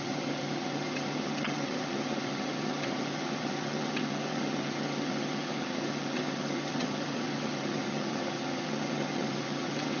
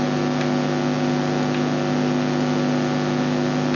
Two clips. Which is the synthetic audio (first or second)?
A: first